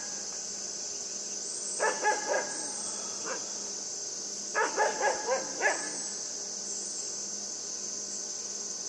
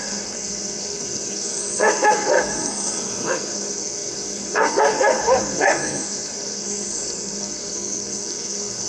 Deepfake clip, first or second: second